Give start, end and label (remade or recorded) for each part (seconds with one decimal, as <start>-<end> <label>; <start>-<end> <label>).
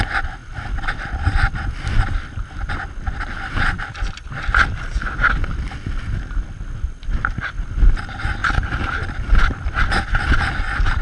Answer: 0.0-8.4 recorded; 8.4-8.9 remade; 8.9-11.0 recorded